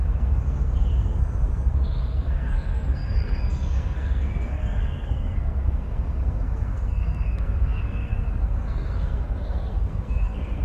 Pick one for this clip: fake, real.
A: fake